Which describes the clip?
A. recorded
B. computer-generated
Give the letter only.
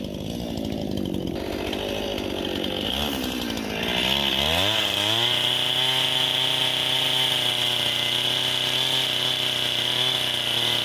A